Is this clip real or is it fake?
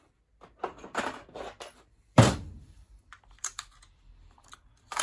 fake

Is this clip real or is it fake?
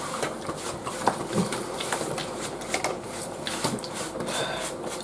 real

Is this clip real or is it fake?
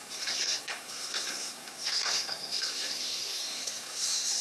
fake